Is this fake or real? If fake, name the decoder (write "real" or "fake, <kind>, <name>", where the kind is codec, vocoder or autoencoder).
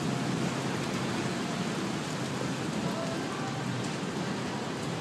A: real